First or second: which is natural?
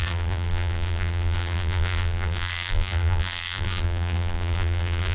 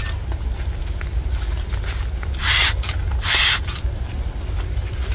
second